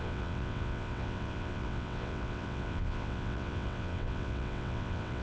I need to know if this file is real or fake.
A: fake